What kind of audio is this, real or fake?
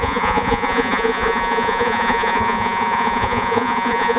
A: fake